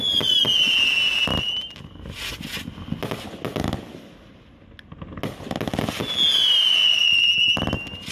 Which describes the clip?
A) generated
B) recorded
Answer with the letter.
B